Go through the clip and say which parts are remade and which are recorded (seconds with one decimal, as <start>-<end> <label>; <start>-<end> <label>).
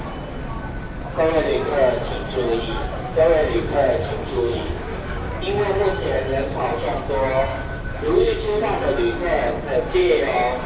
0.0-3.1 recorded; 3.1-5.3 remade; 5.3-7.5 recorded; 7.5-8.6 remade; 8.6-10.0 recorded; 10.0-10.7 remade